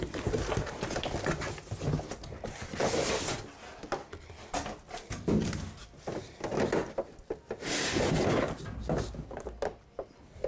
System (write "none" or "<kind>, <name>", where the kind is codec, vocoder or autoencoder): none